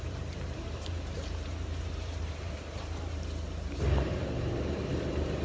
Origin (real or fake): fake